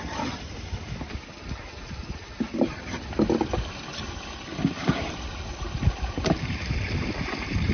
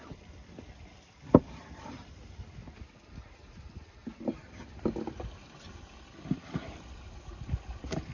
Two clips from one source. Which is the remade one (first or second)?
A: first